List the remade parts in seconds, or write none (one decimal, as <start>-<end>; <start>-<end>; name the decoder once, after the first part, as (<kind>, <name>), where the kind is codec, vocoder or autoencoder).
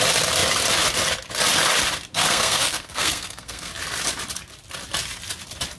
2.1-3.7 (codec, SNAC)